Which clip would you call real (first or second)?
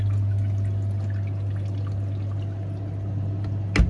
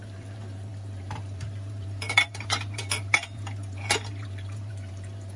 first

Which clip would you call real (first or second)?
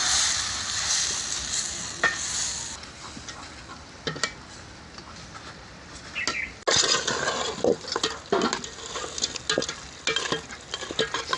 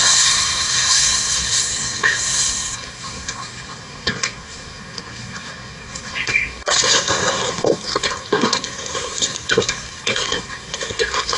first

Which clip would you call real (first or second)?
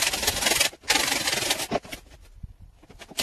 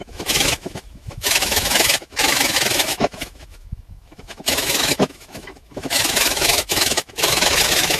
first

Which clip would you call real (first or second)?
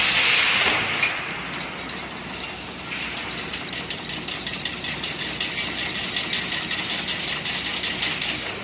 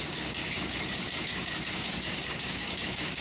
first